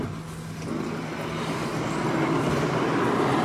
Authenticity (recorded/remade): recorded